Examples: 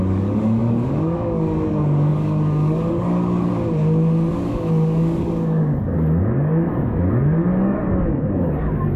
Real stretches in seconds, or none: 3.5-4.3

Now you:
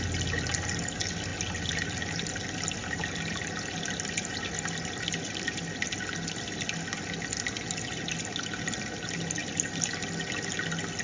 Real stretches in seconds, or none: 0.0-11.0

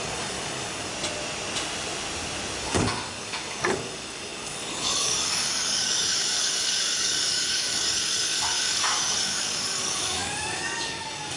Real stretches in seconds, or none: 0.9-2.6